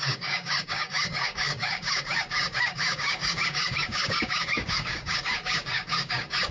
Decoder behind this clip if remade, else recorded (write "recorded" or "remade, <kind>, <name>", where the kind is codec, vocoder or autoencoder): remade, codec, DAC